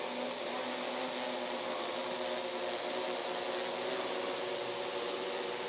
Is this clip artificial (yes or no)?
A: no